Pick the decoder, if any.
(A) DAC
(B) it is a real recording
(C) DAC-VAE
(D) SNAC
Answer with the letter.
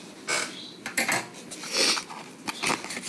B